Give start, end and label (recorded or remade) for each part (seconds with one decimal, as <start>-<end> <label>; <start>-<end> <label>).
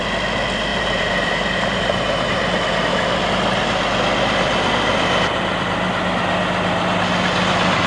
0.0-0.7 recorded; 0.7-2.4 remade; 2.4-7.9 recorded